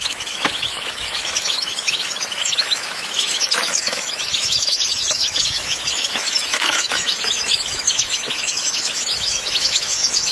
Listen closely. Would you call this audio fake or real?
fake